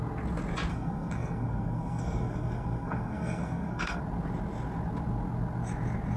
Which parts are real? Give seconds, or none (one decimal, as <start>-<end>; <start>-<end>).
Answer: 0.0-0.7; 4.0-6.2